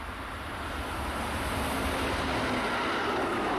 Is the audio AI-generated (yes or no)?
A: no